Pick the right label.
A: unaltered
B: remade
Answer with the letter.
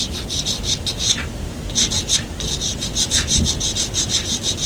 A